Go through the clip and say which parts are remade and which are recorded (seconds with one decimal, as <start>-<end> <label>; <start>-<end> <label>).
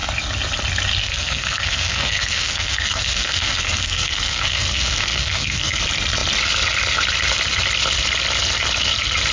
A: 0.0-1.0 recorded; 1.0-5.8 remade; 5.8-9.3 recorded